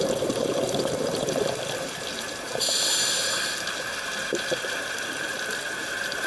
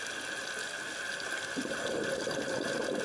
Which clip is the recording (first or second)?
second